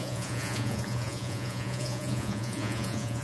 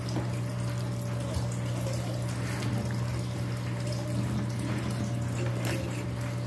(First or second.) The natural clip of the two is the second